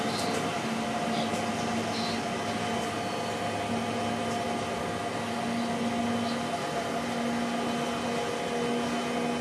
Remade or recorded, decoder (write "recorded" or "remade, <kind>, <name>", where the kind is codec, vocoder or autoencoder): recorded